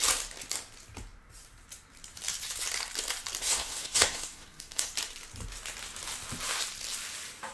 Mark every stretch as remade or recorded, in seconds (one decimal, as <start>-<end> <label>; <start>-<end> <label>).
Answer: 0.0-3.4 recorded; 3.4-4.9 remade; 4.9-7.5 recorded